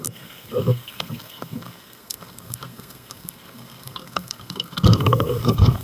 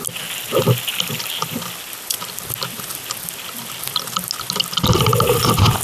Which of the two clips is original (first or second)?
second